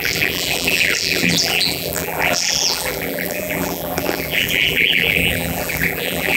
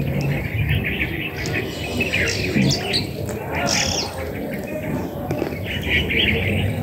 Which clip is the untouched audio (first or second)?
second